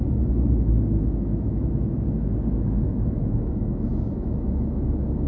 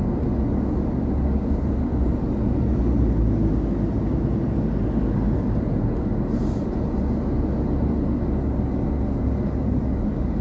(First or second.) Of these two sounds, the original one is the second